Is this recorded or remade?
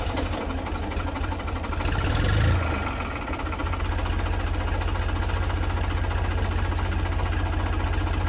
recorded